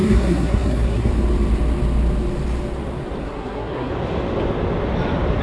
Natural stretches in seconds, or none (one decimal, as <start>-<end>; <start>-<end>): 1.1-3.2; 3.9-5.4